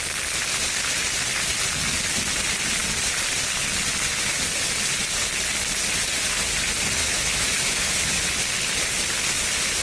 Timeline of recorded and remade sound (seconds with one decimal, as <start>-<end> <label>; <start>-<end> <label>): 0.0-7.0 recorded; 7.0-8.2 remade; 8.2-9.8 recorded